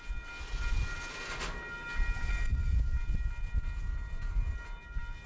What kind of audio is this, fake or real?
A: real